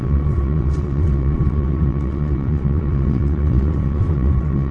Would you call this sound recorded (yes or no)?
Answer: no